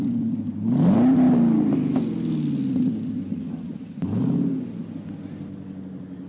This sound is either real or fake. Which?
real